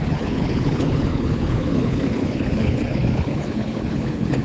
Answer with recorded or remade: remade